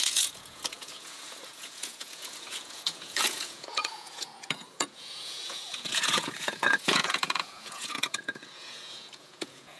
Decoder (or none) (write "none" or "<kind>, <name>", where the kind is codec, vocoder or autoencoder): vocoder, Vocos